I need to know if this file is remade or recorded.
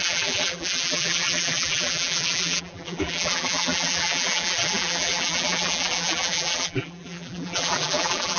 remade